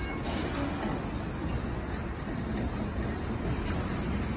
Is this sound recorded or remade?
recorded